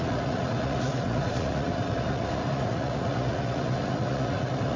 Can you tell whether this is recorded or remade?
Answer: remade